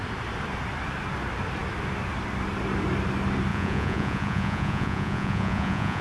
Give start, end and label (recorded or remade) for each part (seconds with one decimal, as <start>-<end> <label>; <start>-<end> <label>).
0.0-3.5 recorded; 3.5-6.0 remade